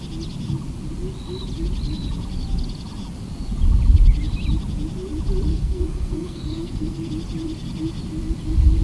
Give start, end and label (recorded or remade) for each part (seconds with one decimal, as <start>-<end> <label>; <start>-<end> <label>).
0.0-5.5 recorded; 5.5-7.1 remade; 7.1-8.8 recorded